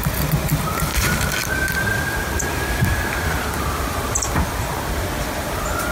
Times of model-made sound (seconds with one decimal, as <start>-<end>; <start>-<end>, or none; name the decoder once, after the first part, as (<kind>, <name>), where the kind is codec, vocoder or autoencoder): 0.9-4.4 (vocoder, BigVGAN v2)